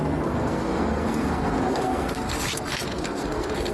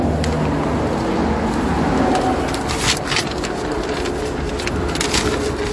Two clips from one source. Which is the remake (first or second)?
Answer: first